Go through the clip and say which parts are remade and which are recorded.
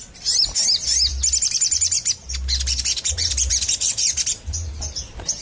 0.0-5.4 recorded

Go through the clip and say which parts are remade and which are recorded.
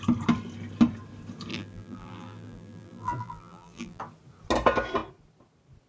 0.0-1.5 recorded; 1.5-4.0 remade; 4.0-5.9 recorded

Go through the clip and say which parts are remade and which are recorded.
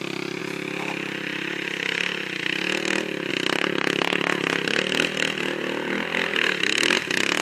0.0-7.4 recorded